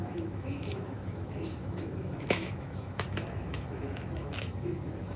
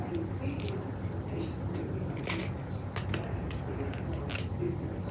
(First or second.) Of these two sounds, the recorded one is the second